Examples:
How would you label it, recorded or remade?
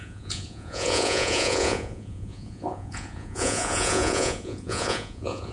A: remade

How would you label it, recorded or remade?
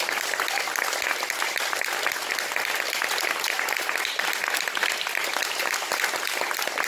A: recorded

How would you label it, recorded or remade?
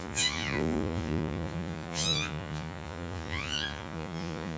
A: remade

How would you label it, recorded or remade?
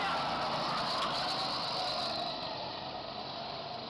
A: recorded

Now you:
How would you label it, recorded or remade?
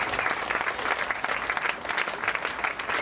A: recorded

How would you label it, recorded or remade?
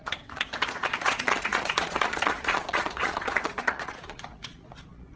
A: remade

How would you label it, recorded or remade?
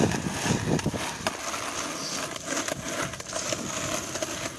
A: recorded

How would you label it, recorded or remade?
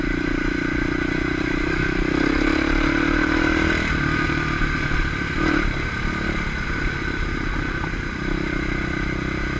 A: recorded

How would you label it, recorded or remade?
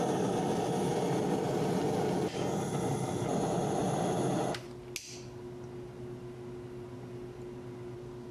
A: recorded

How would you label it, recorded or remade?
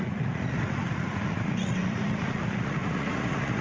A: remade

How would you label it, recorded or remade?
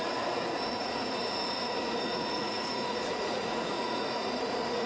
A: remade